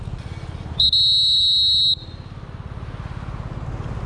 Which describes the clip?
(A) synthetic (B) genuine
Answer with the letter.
B